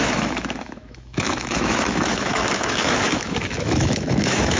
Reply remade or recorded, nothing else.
remade